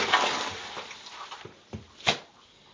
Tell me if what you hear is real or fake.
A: real